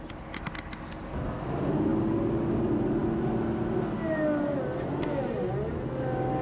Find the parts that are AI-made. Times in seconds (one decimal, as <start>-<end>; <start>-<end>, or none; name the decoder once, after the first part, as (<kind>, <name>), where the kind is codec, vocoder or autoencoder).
none